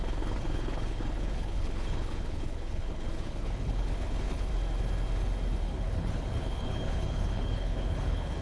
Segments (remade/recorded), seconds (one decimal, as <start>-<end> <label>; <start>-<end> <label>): 0.0-4.5 remade; 4.5-5.6 recorded; 5.6-8.4 remade